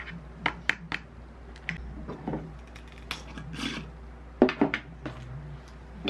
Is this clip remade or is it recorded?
recorded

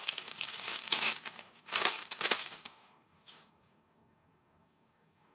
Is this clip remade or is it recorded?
remade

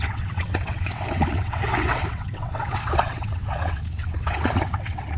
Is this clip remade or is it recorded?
remade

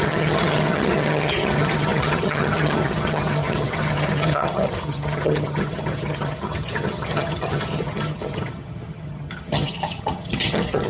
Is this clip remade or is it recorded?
remade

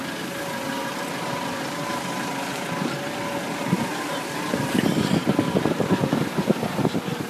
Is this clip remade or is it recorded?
recorded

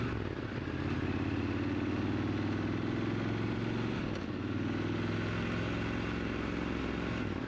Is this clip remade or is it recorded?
recorded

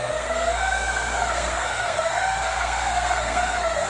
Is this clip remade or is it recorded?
remade